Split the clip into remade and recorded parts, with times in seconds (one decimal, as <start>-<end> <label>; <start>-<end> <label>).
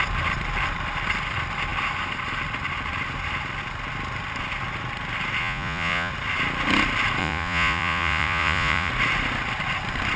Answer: 0.0-5.4 recorded; 5.4-6.1 remade; 6.1-7.2 recorded; 7.2-8.9 remade; 8.9-10.2 recorded